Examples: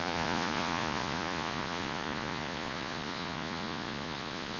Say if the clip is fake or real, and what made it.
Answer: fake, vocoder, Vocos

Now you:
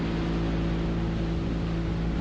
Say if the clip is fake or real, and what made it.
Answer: real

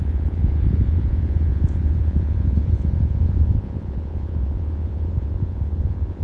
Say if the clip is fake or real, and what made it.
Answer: fake, vocoder, Vocos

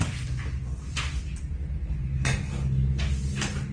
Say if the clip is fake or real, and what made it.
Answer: real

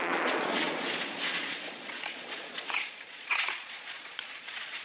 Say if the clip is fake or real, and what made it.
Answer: fake, vocoder, Vocos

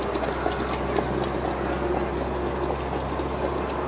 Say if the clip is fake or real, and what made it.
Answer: real